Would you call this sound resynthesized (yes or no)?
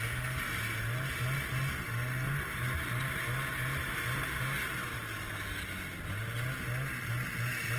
no